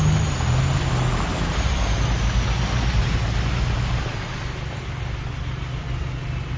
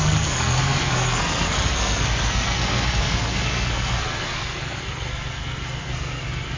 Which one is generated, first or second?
second